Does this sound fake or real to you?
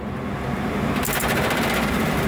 real